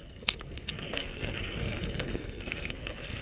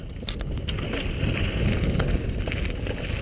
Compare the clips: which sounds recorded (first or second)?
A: second